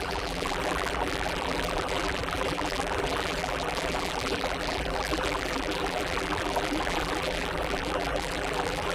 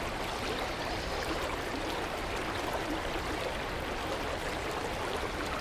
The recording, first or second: second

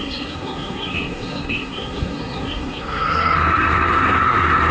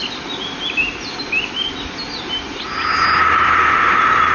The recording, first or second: second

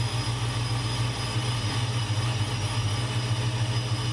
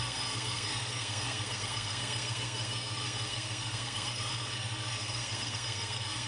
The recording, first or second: first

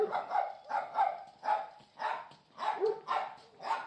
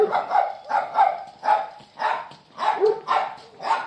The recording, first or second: first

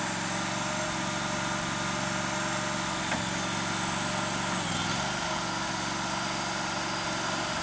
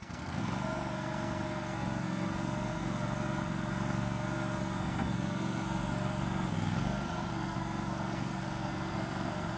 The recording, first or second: first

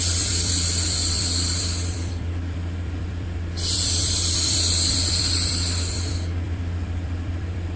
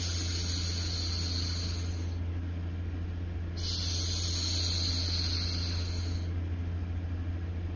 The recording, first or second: second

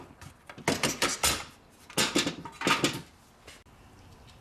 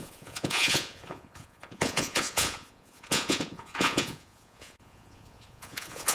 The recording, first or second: first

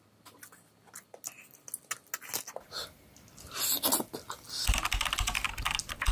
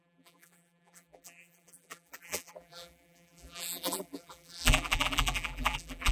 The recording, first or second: first